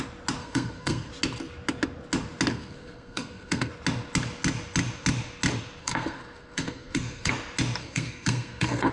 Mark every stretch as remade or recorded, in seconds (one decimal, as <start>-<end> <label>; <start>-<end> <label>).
0.0-0.4 recorded; 0.4-1.1 remade; 1.1-2.5 recorded; 2.5-3.7 remade; 3.7-5.8 recorded; 5.8-7.3 remade; 7.3-7.8 recorded; 7.8-8.9 remade